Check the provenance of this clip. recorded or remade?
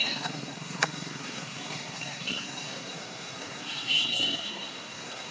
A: remade